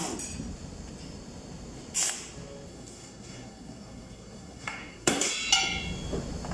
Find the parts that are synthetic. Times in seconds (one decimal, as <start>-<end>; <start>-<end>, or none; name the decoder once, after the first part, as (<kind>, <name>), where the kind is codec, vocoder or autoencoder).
2.7-5.3 (codec, SNAC)